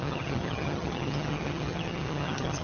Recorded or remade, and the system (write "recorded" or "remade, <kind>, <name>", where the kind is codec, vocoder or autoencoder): remade, vocoder, HiFi-GAN